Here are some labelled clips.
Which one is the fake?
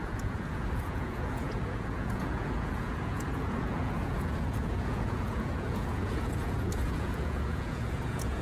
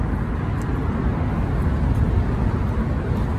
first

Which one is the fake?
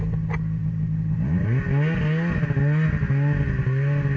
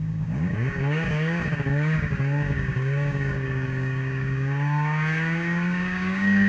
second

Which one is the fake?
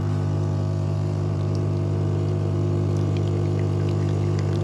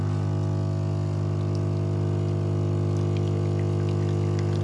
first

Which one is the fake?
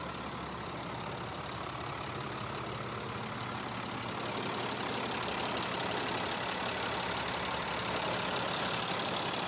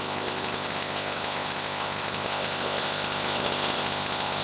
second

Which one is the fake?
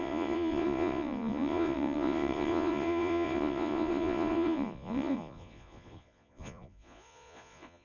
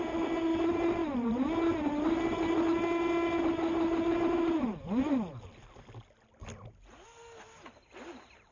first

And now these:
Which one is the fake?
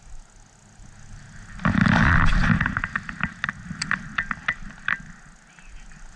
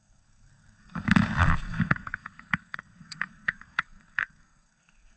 second